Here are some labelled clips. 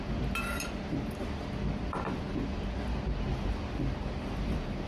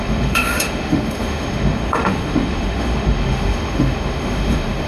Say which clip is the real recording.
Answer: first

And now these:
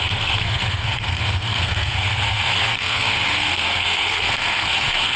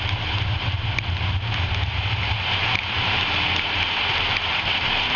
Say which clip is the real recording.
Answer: second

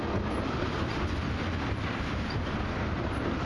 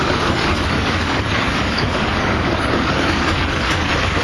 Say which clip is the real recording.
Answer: first